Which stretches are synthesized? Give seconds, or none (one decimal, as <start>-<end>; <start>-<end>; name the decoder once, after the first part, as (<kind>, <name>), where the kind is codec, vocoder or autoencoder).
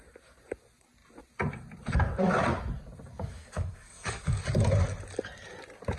3.1-4.4 (codec, DAC)